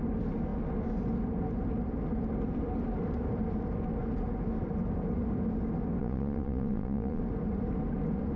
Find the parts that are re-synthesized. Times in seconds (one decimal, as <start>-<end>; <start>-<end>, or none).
6.0-7.2

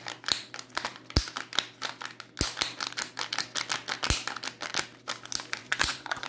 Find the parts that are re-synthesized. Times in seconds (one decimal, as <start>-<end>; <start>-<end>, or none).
5.6-6.3

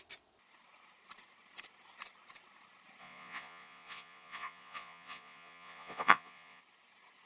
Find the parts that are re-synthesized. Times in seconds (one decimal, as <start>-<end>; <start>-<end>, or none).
3.0-6.6

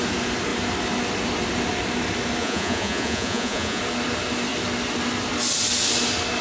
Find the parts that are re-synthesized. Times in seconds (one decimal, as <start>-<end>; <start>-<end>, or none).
2.4-3.8